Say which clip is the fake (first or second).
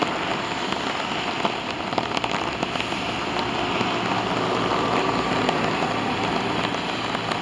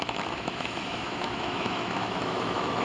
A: second